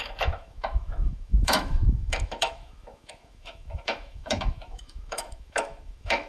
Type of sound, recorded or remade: remade